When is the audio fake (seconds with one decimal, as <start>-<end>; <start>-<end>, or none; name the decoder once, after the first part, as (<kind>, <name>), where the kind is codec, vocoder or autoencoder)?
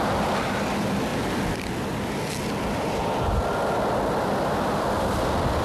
1.1-2.3 (vocoder, BigVGAN v2)